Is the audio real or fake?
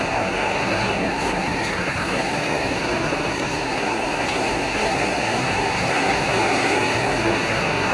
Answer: fake